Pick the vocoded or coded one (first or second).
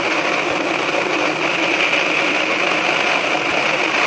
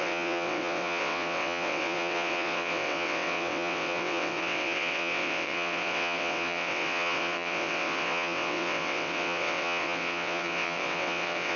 second